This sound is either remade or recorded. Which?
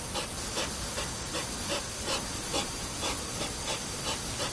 recorded